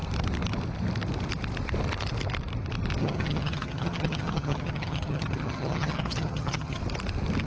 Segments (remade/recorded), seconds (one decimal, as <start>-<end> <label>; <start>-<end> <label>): 0.0-3.0 recorded; 3.0-6.8 remade; 6.8-7.5 recorded